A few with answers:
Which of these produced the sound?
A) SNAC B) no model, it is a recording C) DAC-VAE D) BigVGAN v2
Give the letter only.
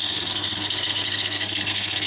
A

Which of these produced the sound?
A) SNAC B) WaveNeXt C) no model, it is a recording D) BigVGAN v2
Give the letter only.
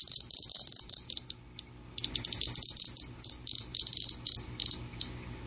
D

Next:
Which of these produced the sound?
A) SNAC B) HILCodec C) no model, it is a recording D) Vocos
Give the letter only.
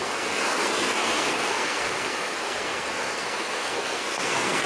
A